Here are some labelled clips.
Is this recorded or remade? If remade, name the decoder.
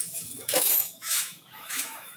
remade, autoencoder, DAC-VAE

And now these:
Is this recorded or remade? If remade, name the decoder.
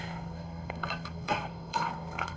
remade, codec, SNAC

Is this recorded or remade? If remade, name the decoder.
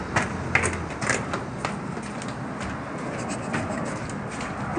recorded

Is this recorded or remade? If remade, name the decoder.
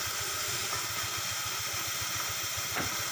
recorded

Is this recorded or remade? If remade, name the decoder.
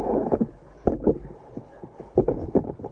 remade, codec, HILCodec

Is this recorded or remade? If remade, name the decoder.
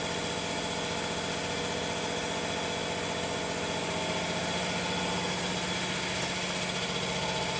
recorded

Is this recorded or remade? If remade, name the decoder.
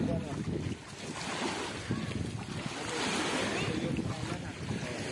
recorded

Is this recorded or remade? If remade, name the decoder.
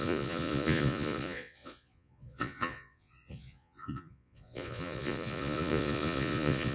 remade, vocoder, Vocos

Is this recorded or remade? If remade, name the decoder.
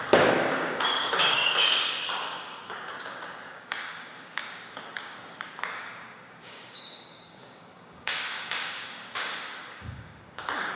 remade, codec, DAC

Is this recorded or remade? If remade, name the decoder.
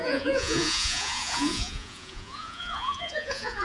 remade, vocoder, Vocos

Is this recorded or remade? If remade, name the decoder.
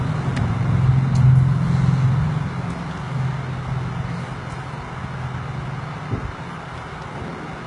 recorded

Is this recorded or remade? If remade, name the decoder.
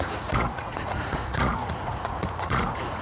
remade, vocoder, Vocos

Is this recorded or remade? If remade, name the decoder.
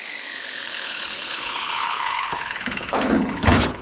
remade, codec, HILCodec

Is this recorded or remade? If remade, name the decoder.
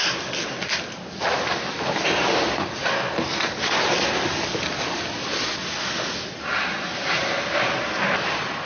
recorded